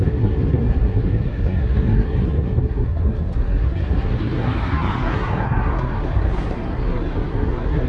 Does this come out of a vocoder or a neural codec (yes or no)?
yes